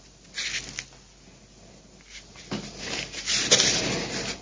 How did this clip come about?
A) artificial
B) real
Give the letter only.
B